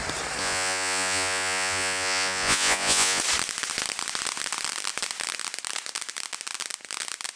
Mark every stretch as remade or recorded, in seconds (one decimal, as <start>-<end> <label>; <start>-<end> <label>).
0.0-0.4 recorded; 0.4-3.2 remade; 3.2-7.4 recorded